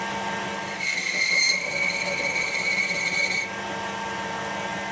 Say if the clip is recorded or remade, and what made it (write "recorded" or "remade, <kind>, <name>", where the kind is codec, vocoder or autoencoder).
recorded